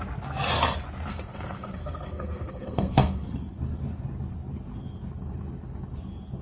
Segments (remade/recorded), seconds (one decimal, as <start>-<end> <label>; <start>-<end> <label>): 0.0-1.1 recorded; 1.1-3.3 remade; 3.3-6.4 recorded